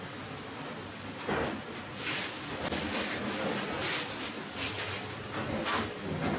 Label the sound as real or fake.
real